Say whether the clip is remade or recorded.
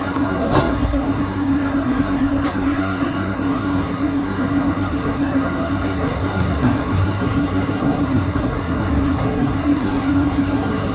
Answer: remade